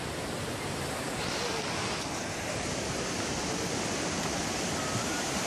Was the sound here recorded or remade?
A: recorded